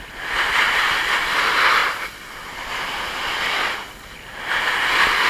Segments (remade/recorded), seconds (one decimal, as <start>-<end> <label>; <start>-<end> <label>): 0.0-5.3 recorded

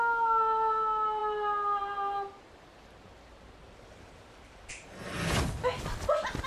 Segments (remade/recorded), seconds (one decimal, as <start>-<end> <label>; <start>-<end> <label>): 0.0-6.5 recorded

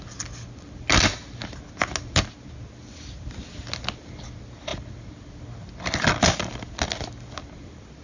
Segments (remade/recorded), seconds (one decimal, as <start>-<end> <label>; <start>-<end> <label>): 0.0-8.0 recorded

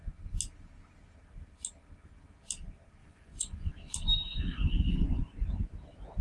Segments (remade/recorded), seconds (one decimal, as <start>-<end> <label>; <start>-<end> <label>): 0.0-3.0 recorded; 3.0-3.7 remade; 3.7-4.3 recorded; 4.3-5.2 remade; 5.2-6.2 recorded

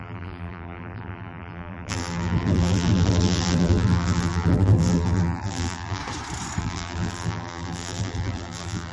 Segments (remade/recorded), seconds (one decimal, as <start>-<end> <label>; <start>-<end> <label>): 0.0-6.0 remade; 6.0-6.6 recorded; 6.6-8.9 remade

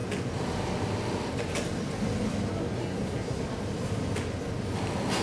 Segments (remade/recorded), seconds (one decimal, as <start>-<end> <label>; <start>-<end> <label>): 0.0-2.8 recorded; 2.8-3.4 remade; 3.4-5.2 recorded